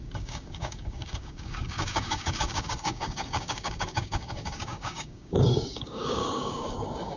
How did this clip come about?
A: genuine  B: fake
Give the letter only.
B